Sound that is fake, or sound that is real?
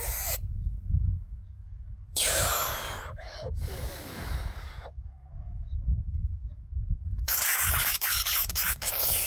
fake